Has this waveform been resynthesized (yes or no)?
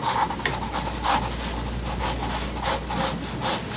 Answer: no